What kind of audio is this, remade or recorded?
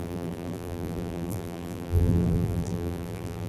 remade